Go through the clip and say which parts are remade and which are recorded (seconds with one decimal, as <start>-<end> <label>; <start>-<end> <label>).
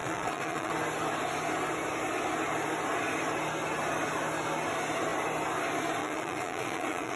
0.0-0.7 remade; 0.7-6.0 recorded; 6.0-7.2 remade